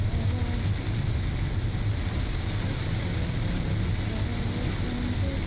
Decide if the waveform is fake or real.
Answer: real